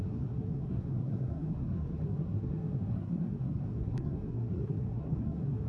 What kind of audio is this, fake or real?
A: fake